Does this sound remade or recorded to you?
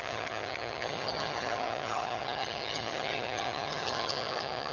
remade